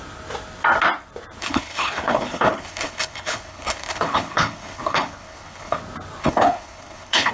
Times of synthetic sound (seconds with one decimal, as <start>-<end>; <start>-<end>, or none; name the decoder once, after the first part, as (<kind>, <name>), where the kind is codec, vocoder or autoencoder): 1.4-5.8 (codec, HILCodec); 6.2-7.3